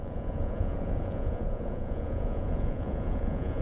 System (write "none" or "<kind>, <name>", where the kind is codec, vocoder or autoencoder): vocoder, Vocos